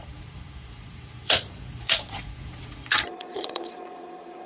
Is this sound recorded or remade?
remade